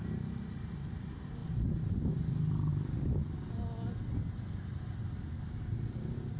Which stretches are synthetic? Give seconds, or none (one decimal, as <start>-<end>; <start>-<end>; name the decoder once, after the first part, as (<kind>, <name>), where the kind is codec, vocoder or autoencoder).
none